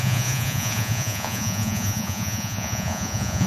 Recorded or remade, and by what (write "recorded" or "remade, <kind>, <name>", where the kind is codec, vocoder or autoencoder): remade, vocoder, Vocos